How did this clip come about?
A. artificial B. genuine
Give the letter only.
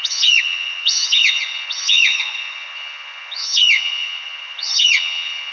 A